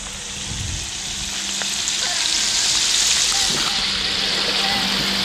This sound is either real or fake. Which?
real